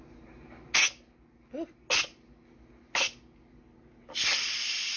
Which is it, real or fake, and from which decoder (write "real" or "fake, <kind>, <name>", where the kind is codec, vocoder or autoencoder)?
real